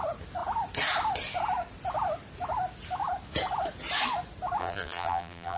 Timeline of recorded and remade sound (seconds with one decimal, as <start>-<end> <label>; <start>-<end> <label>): 0.0-4.6 recorded; 4.6-5.6 remade